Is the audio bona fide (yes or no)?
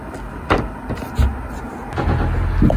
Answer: yes